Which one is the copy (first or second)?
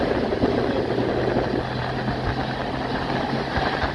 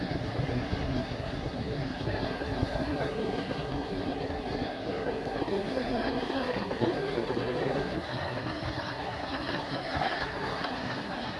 second